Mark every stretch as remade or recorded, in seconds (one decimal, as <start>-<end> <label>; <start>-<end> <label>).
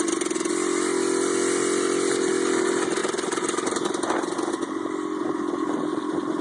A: 0.0-6.4 remade